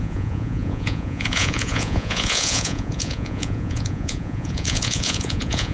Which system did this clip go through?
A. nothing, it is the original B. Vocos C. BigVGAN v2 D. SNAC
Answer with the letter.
B